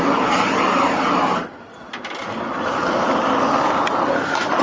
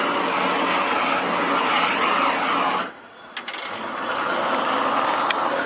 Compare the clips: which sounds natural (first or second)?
second